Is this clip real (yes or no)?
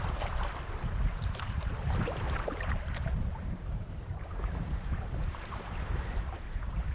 no